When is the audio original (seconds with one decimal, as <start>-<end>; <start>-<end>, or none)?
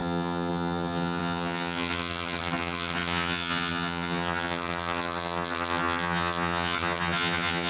none